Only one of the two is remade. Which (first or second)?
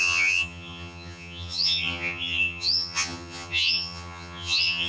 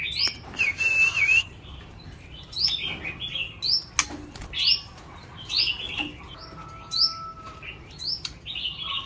first